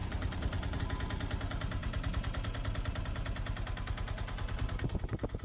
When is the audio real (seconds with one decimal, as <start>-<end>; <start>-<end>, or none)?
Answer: 0.8-5.4